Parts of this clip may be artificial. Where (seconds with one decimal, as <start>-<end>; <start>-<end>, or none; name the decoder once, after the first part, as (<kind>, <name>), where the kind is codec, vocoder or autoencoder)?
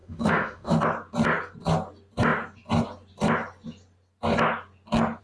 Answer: 0.0-0.8 (autoencoder, DAC-VAE)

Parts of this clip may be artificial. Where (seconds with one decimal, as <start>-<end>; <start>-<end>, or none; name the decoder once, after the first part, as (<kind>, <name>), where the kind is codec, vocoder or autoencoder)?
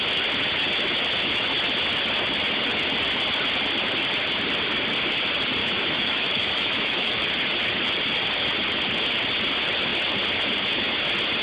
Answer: 5.6-7.1 (autoencoder, DAC-VAE)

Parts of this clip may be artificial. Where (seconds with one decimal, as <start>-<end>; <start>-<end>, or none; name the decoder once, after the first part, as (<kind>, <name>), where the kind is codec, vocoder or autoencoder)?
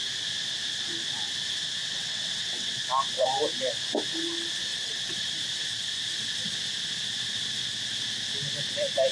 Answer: 1.8-2.8 (vocoder, WaveNeXt); 4.7-5.3